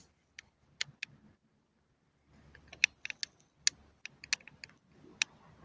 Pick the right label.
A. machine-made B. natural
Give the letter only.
B